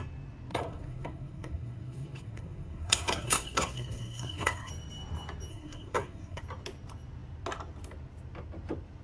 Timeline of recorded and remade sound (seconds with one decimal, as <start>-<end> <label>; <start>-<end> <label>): 0.0-0.5 recorded; 0.5-4.7 remade; 4.7-5.5 recorded; 5.5-6.4 remade; 6.4-9.0 recorded